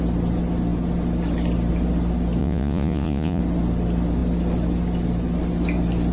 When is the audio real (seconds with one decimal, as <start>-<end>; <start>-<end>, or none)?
0.0-2.4; 3.4-6.1